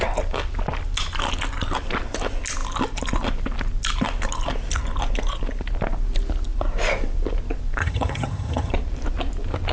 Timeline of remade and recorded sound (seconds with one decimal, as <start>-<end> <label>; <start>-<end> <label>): 0.0-7.8 recorded; 7.8-8.7 remade; 8.7-9.7 recorded

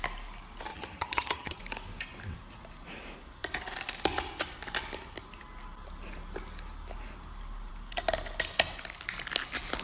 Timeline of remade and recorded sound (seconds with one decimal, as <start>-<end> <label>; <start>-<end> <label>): 0.0-0.7 recorded; 0.7-1.6 remade; 1.6-9.8 recorded

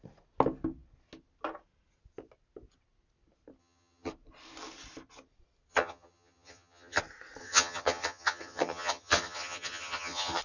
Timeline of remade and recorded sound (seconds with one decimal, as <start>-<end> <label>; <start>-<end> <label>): 0.0-3.6 recorded; 3.6-4.1 remade; 4.1-5.7 recorded; 5.7-7.0 remade; 7.0-7.4 recorded; 7.4-10.4 remade

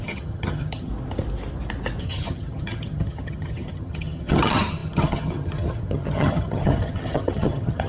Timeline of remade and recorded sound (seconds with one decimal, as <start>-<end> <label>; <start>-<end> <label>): 0.0-0.9 remade; 0.9-2.0 recorded; 2.0-7.9 remade

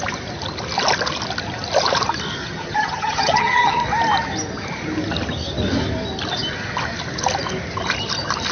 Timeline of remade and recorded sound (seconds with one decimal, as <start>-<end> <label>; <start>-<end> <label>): 0.0-2.4 recorded; 2.4-3.8 remade; 3.8-8.5 recorded

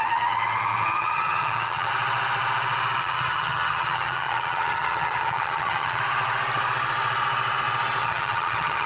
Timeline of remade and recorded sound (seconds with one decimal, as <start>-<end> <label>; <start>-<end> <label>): 0.0-0.9 recorded; 0.9-1.9 remade; 1.9-3.0 recorded; 3.0-6.0 remade; 6.0-8.0 recorded; 8.0-8.9 remade

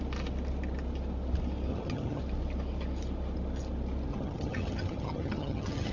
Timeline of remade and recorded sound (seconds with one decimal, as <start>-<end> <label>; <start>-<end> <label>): 0.0-1.7 recorded; 1.7-2.2 remade; 2.2-4.1 recorded; 4.1-5.9 remade